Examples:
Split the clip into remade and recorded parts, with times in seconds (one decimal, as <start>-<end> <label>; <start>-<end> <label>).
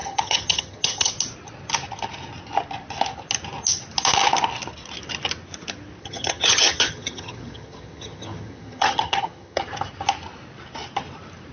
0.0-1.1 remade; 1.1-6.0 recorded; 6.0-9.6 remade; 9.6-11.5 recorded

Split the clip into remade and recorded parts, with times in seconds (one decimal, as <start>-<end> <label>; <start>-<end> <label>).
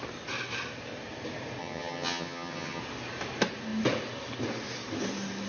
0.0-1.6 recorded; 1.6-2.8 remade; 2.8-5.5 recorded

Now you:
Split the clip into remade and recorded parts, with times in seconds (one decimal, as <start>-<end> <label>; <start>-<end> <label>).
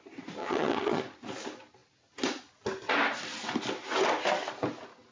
0.0-0.4 recorded; 0.4-1.0 remade; 1.0-5.1 recorded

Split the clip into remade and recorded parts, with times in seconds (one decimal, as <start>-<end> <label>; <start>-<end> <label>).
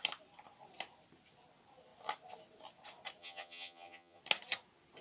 0.0-3.2 recorded; 3.2-4.2 remade; 4.2-5.0 recorded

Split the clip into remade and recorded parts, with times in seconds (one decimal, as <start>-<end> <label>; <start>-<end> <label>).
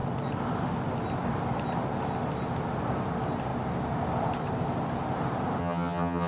0.0-5.6 recorded; 5.6-6.3 remade